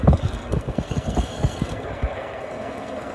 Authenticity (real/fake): fake